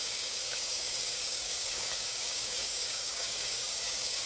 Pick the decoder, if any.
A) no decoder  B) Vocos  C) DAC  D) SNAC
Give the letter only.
C